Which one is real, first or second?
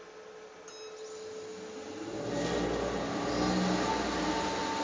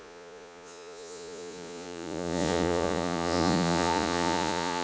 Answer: first